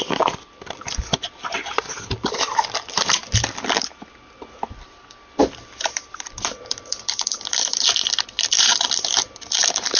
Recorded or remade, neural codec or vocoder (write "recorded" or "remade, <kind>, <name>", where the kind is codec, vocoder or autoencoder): remade, vocoder, BigVGAN v2